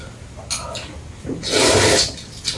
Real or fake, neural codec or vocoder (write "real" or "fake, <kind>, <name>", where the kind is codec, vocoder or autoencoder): real